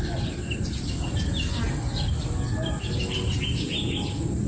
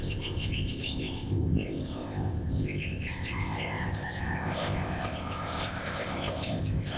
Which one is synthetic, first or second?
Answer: second